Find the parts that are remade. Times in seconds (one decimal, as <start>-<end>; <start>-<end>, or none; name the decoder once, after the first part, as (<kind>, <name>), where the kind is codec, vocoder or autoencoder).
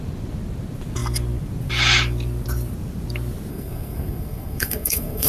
3.5-5.3 (codec, SNAC)